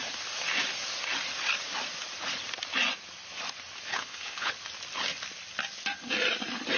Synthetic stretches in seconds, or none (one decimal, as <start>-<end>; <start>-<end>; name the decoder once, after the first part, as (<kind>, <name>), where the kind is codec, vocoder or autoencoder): 3.9-4.5 (codec, HILCodec)